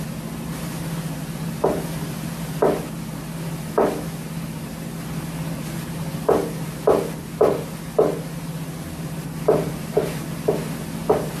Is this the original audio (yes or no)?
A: yes